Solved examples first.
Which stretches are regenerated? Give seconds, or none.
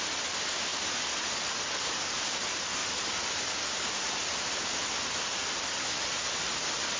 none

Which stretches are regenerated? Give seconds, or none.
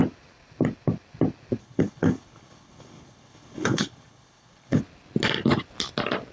1.6-4.8 (codec, HILCodec)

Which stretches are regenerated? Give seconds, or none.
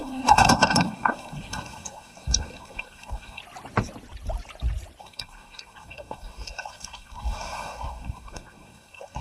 0.0-3.4 (codec, SNAC); 5.0-9.2